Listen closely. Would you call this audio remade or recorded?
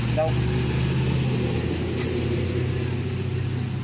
recorded